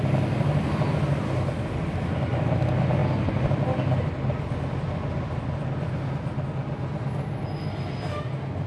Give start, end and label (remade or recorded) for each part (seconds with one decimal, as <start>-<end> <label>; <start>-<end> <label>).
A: 0.0-8.7 recorded